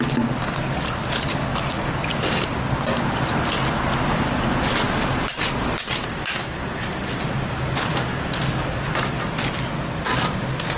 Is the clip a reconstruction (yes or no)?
no